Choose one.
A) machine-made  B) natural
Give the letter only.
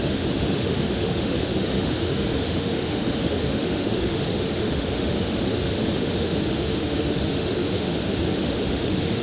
A